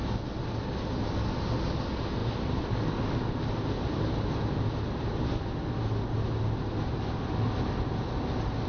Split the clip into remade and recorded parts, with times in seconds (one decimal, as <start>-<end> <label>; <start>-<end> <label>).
0.0-8.7 recorded